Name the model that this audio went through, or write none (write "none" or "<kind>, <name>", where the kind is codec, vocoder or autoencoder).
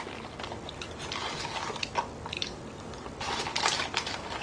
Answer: none